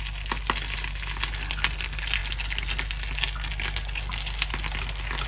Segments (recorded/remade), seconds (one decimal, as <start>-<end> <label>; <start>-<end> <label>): 0.0-5.3 recorded